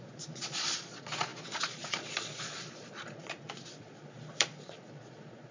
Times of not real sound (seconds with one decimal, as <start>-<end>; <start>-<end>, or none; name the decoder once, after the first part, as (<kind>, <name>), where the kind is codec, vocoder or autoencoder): 0.0-5.5 (vocoder, Vocos)